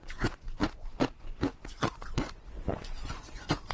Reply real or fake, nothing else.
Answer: fake